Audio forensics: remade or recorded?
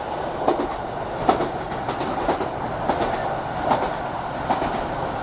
recorded